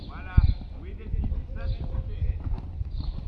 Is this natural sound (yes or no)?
yes